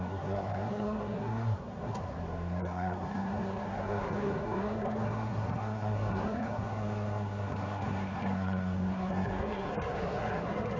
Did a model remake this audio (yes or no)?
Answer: yes